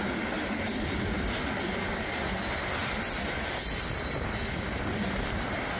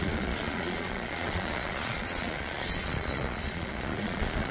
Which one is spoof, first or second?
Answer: second